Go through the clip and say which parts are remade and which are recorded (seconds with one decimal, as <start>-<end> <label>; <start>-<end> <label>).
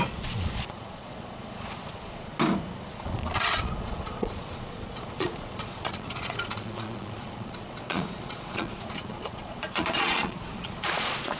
0.0-2.3 remade; 2.3-2.9 recorded; 2.9-11.4 remade